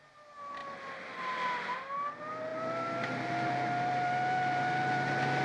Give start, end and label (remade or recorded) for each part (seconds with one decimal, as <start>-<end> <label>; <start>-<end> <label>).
0.0-5.4 recorded